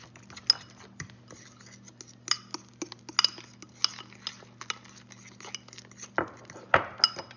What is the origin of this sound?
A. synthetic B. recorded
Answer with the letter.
B